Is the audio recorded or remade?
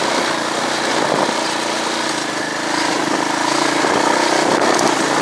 recorded